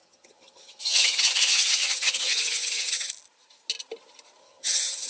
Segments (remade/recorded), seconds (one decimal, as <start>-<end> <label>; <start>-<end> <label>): 0.0-3.1 remade; 3.1-4.4 recorded; 4.4-5.1 remade